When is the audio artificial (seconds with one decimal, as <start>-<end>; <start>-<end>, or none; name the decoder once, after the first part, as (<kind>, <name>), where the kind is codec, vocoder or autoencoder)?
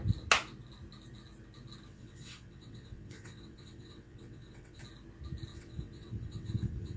1.9-4.8 (vocoder, WaveNeXt); 5.5-7.0